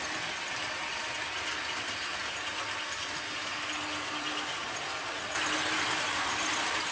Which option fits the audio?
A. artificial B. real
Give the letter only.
B